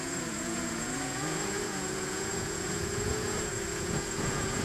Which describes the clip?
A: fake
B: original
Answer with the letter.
A